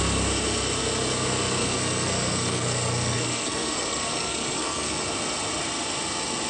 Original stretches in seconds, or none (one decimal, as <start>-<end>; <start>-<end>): 0.0-1.6; 5.0-6.5